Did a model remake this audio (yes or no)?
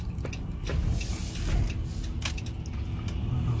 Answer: no